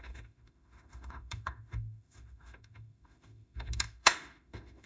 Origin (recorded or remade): remade